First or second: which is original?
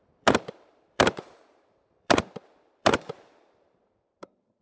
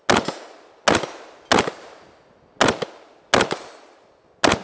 second